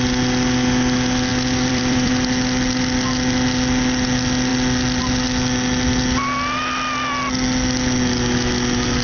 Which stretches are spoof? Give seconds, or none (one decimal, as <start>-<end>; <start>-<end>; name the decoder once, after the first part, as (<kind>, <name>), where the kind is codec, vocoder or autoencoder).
1.3-2.1 (vocoder, BigVGAN v2)

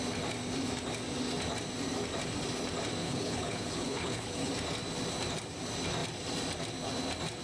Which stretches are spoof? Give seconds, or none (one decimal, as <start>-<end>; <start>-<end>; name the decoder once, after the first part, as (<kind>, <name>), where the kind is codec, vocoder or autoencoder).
3.0-4.5 (codec, HILCodec)

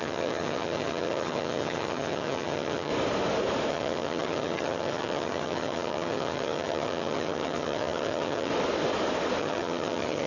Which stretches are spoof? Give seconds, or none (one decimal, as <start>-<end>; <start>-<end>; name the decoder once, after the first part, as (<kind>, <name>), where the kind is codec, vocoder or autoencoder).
0.0-2.9 (vocoder, HiFi-GAN); 3.7-8.5; 9.4-10.3

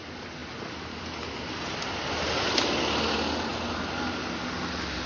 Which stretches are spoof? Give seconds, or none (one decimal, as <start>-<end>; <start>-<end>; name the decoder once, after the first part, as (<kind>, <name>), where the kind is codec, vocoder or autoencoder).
none

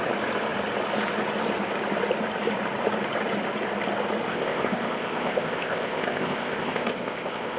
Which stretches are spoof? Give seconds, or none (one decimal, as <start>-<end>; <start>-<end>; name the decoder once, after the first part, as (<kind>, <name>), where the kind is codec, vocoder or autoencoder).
4.3-7.6 (codec, ZipCodec)

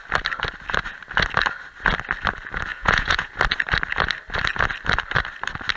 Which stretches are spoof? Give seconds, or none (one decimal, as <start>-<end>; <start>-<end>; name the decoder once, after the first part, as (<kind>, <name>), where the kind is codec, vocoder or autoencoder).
2.7-3.3 (vocoder, Vocos)

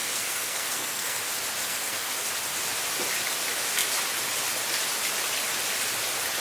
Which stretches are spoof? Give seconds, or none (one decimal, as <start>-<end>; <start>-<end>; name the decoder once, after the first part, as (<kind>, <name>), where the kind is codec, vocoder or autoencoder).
0.0-1.2 (codec, SNAC); 1.6-2.3

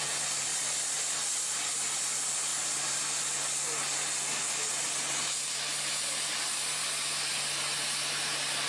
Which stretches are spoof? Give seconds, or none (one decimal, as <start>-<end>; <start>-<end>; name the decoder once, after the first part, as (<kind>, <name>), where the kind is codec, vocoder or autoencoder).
none